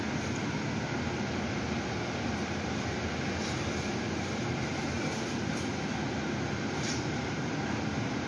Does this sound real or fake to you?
real